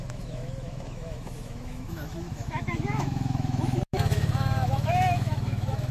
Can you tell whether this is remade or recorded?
remade